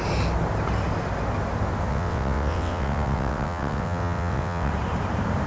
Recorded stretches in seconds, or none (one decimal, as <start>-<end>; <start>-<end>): 0.0-1.9; 4.7-5.5